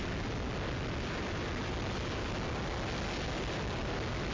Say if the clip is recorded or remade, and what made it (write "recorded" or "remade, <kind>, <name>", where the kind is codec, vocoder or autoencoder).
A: recorded